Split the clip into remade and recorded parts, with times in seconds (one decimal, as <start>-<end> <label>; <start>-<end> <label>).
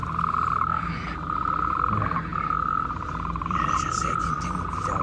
0.0-2.3 recorded; 2.3-4.2 remade; 4.2-5.0 recorded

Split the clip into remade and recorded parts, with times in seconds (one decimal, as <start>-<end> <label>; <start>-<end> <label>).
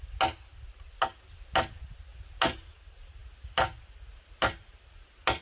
0.0-5.4 recorded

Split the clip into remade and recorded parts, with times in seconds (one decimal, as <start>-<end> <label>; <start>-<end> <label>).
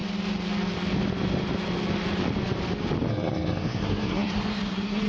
0.0-3.1 recorded; 3.1-5.1 remade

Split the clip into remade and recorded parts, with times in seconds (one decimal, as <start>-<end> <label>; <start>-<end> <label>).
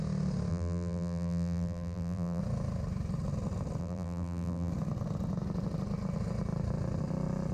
0.0-0.5 recorded; 0.5-2.4 remade; 2.4-3.8 recorded; 3.8-4.7 remade; 4.7-7.5 recorded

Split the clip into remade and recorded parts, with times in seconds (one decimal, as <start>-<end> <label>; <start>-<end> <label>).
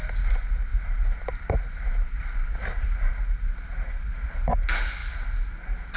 0.0-0.7 recorded; 0.7-4.3 remade; 4.3-6.0 recorded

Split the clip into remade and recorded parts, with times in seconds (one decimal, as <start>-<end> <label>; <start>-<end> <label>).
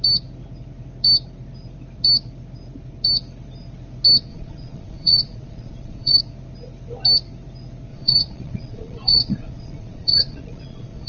0.0-4.3 recorded; 4.3-6.2 remade; 6.2-7.9 recorded; 7.9-11.1 remade